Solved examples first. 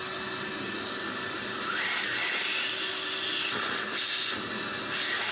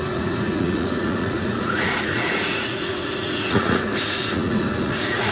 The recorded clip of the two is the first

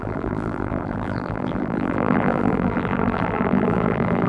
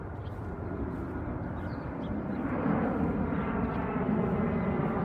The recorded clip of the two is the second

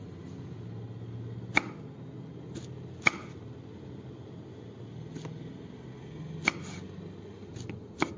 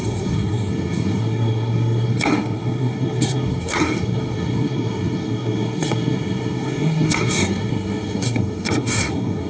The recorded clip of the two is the first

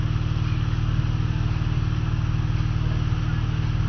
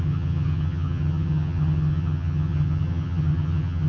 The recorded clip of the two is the first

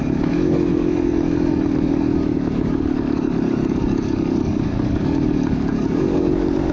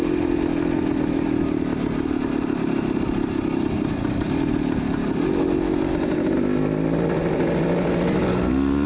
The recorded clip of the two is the second